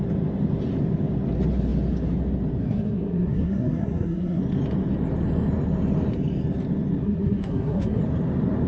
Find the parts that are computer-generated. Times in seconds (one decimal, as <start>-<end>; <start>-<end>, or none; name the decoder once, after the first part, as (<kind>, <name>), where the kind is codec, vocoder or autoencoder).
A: 2.6-4.4 (codec, SNAC); 7.0-8.0